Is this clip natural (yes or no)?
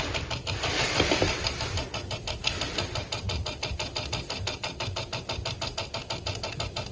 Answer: yes